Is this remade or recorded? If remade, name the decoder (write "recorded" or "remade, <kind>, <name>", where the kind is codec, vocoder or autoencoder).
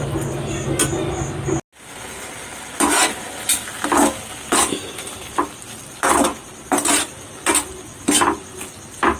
recorded